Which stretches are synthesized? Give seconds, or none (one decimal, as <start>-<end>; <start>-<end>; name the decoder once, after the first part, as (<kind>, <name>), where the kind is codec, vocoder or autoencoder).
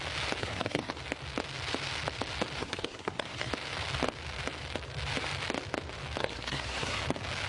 0.4-0.9 (codec, SNAC); 2.6-3.5; 6.2-7.0